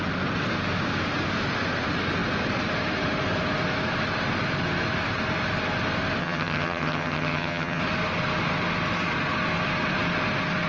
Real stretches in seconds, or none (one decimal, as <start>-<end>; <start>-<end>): 0.0-6.2; 7.8-10.7